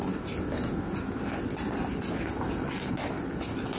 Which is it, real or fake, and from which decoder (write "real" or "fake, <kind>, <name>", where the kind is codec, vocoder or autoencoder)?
real